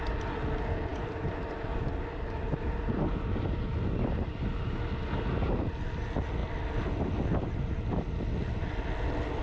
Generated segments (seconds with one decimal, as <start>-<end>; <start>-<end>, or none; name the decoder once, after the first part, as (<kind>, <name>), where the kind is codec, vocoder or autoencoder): none

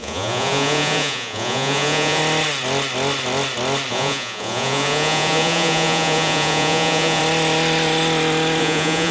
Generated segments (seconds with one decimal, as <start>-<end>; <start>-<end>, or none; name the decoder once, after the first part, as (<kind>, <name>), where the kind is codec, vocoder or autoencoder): 0.0-2.2 (vocoder, Vocos); 3.9-7.2; 8.6-9.1

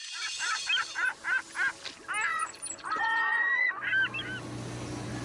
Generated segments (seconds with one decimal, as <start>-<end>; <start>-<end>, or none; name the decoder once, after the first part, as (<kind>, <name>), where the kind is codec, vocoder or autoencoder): 0.0-0.6 (vocoder, Vocos); 2.3-3.8

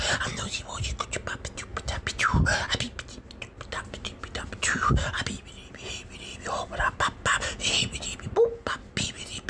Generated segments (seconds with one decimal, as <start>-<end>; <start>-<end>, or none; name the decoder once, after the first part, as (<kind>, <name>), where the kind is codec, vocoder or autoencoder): none

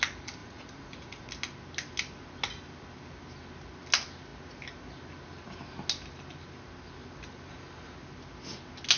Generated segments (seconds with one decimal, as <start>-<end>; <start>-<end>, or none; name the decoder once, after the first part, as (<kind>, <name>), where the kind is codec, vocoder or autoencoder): 0.4-1.3 (vocoder, Vocos)

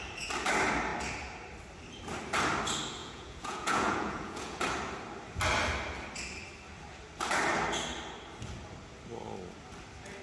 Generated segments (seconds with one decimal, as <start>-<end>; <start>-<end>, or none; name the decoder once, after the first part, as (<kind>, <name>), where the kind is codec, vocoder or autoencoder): 3.0-4.6 (vocoder, Vocos)

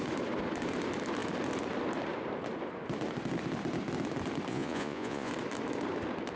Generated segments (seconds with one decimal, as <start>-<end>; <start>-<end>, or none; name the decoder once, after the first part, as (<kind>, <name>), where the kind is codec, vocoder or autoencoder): 4.5-5.3 (vocoder, Vocos)

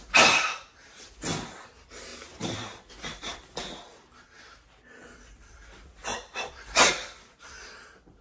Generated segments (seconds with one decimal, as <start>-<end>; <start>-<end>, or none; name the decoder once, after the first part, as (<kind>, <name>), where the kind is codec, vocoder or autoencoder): none